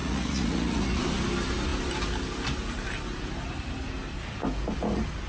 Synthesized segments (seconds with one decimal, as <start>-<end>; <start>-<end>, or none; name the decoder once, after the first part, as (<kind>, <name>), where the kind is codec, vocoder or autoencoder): 0.0-1.0 (vocoder, Vocos)